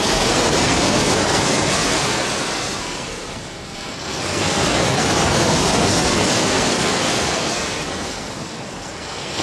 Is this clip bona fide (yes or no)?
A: no